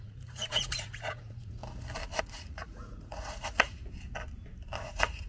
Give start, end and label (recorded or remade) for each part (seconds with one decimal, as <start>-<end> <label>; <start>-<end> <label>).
0.0-1.6 remade; 1.6-2.2 recorded; 2.2-3.8 remade; 3.8-4.8 recorded; 4.8-5.3 remade